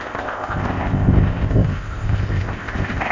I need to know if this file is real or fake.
fake